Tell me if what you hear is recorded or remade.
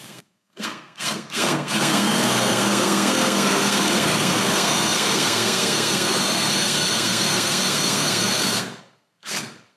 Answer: remade